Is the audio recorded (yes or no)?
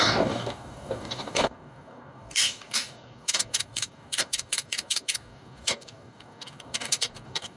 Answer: no